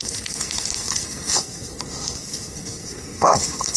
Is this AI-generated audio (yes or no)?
yes